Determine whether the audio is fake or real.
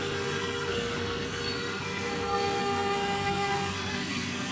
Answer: fake